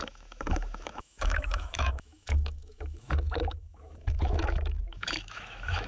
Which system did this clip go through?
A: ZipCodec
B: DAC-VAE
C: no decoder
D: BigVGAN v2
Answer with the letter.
B